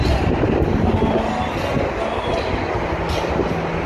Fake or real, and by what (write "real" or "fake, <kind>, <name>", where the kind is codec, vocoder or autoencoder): real